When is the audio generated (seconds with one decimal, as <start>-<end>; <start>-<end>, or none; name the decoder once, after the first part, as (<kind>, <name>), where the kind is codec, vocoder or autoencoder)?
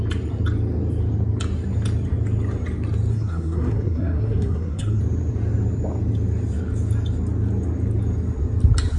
3.1-5.0 (codec, SNAC)